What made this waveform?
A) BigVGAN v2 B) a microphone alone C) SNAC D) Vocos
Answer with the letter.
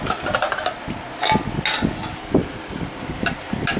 B